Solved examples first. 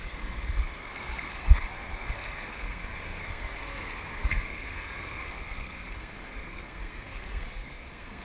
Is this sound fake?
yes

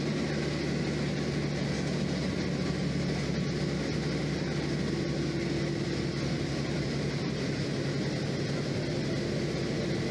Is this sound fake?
no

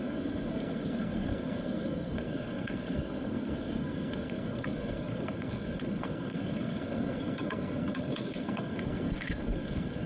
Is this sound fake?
yes